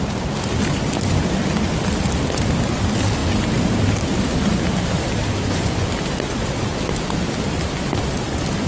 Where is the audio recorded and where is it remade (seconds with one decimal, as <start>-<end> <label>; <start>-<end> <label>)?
0.0-5.4 recorded; 5.4-5.9 remade; 5.9-8.7 recorded